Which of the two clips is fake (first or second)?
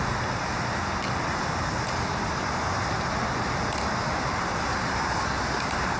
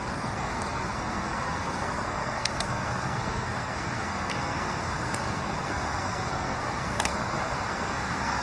second